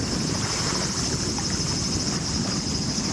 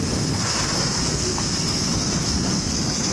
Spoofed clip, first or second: second